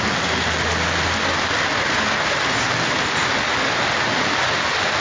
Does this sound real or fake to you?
real